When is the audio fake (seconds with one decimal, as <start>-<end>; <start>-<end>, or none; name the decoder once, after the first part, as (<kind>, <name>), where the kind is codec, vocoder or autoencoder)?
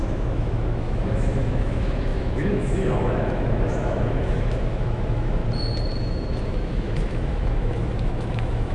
0.0-5.4 (autoencoder, DAC-VAE); 6.0-8.7